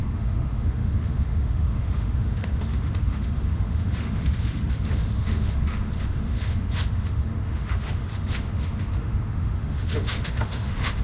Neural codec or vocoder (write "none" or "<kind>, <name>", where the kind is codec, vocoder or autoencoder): autoencoder, DAC-VAE